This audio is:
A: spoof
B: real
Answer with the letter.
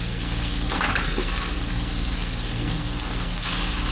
A